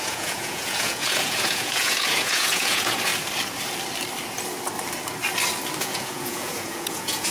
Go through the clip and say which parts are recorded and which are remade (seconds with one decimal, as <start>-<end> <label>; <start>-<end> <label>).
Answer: 0.0-3.1 remade; 3.1-5.8 recorded; 5.8-7.3 remade